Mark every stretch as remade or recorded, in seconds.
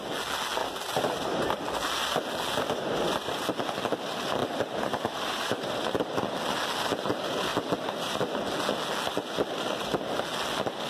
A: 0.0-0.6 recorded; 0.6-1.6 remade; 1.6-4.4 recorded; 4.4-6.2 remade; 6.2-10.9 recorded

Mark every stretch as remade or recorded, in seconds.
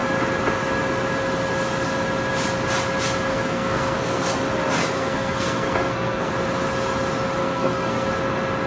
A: 0.0-3.3 recorded; 3.3-4.3 remade; 4.3-4.8 recorded; 4.8-6.3 remade; 6.3-7.4 recorded; 7.4-8.1 remade; 8.1-8.7 recorded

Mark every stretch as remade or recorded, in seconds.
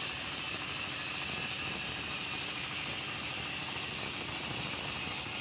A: 0.0-5.4 recorded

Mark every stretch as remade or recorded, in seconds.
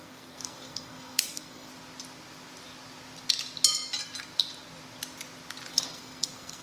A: 0.0-1.7 remade; 1.7-5.7 recorded; 5.7-6.6 remade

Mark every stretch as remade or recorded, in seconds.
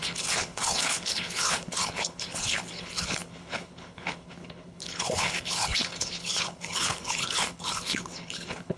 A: 0.0-8.8 remade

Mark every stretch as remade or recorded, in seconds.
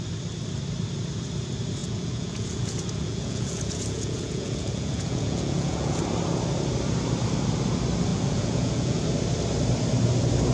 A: 0.0-1.8 recorded; 1.8-6.0 remade; 6.0-8.1 recorded; 8.1-9.0 remade; 9.0-10.5 recorded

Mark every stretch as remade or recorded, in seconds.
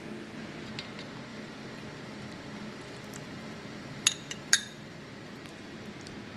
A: 0.0-1.3 recorded; 1.3-5.1 remade; 5.1-6.4 recorded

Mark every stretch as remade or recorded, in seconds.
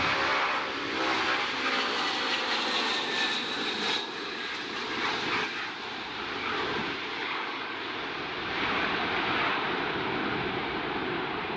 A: 0.0-7.2 recorded; 7.2-7.9 remade; 7.9-11.6 recorded